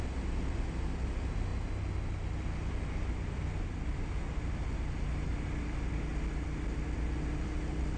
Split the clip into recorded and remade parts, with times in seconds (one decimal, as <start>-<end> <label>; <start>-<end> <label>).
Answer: 0.0-8.0 recorded